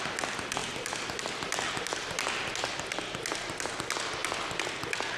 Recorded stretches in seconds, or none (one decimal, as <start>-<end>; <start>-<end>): 0.0-5.2